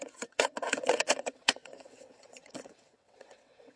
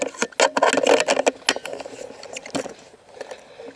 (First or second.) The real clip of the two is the second